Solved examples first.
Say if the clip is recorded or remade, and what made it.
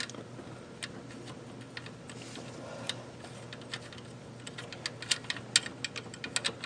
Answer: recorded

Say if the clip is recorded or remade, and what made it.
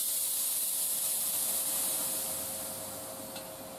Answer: recorded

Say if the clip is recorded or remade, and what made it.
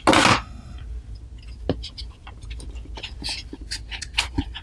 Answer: recorded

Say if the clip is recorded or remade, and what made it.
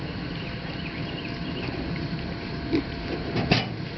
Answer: recorded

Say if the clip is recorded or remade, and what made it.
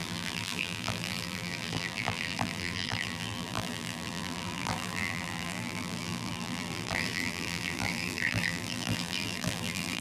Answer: remade, vocoder, BigVGAN v2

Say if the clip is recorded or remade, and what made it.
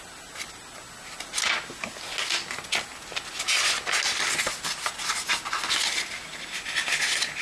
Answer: recorded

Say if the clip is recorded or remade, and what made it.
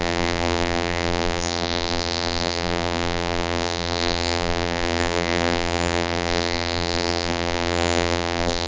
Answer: remade, vocoder, BigVGAN v2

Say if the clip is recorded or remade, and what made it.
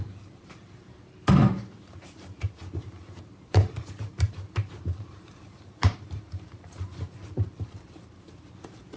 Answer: remade, vocoder, BigVGAN v2